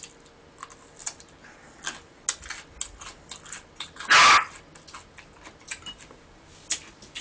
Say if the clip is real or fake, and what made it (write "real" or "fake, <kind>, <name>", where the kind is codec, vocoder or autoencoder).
real